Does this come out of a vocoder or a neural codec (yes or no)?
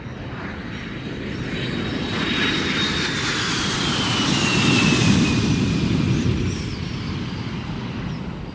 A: no